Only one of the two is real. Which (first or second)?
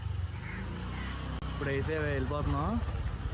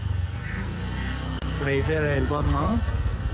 first